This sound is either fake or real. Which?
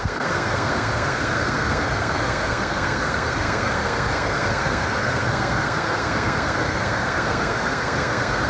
fake